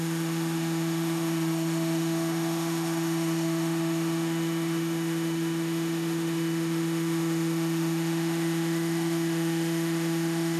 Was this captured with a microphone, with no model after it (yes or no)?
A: no